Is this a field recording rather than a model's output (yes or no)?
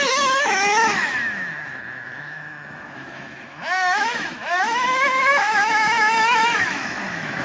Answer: no